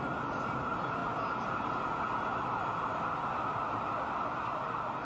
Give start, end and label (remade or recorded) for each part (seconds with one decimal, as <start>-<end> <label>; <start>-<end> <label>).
0.0-5.0 recorded

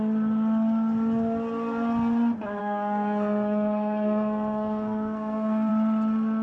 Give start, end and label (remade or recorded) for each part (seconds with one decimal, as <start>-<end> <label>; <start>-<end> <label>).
0.0-2.6 recorded; 2.6-5.7 remade; 5.7-6.4 recorded

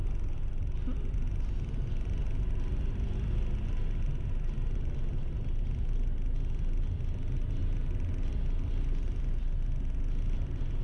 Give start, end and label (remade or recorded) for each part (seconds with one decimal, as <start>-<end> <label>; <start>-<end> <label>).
0.0-10.8 recorded